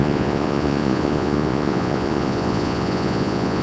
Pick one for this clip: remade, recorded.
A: remade